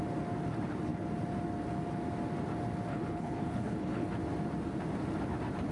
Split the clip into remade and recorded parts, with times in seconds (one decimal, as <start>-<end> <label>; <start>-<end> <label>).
0.0-2.9 recorded; 2.9-4.1 remade; 4.1-5.7 recorded